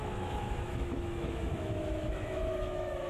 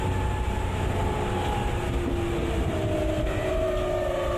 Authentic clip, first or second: second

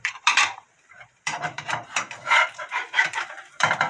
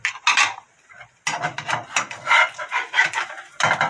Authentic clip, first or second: second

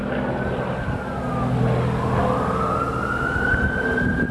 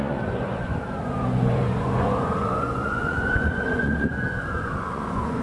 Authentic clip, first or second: first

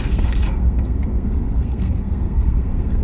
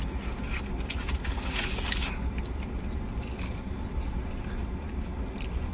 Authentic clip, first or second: second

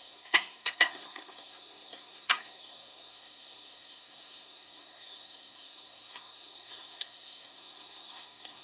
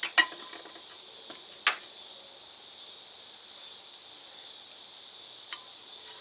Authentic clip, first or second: second